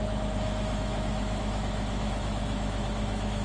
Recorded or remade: remade